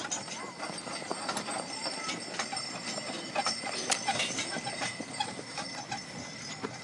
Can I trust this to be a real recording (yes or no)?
yes